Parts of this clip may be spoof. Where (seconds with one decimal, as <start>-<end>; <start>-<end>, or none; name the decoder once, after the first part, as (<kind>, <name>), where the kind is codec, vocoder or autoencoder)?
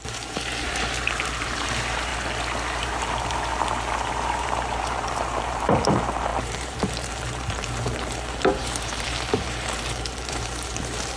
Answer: 0.0-2.1 (vocoder, BigVGAN v2); 2.8-3.5; 4.1-11.2